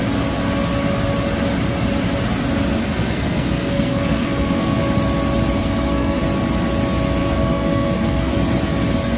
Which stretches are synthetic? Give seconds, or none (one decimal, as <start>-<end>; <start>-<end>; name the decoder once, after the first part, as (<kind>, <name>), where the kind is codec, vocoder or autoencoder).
2.8-4.8 (codec, SNAC); 5.6-6.2; 7.2-8.3